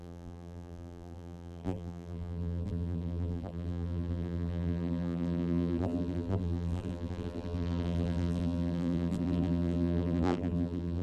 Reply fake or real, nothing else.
fake